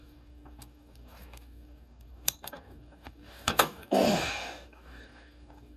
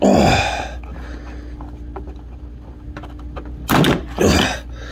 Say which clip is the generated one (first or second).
first